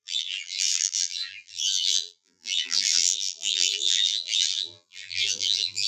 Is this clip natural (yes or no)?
no